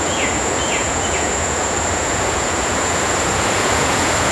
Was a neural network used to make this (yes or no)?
yes